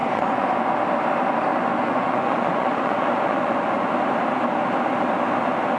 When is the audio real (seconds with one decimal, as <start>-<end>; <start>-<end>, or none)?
0.5-1.5; 3.9-5.8